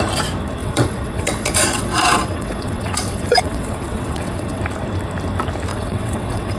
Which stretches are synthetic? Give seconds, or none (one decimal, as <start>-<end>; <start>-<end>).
0.6-4.6; 5.7-6.6